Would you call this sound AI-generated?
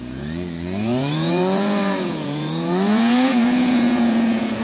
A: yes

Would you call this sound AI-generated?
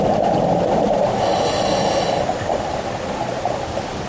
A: no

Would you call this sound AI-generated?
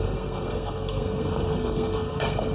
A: yes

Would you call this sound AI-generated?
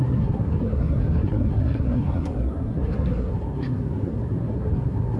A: yes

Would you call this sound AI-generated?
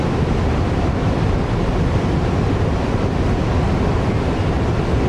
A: no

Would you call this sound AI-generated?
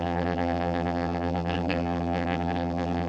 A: yes